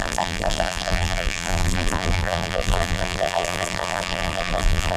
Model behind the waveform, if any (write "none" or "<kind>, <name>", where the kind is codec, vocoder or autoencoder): vocoder, BigVGAN v2